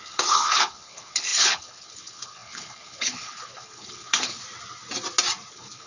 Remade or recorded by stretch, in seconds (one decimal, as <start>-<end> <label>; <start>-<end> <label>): 0.0-4.4 remade; 4.4-5.5 recorded; 5.5-5.9 remade